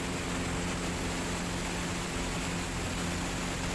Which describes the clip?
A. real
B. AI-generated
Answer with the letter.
A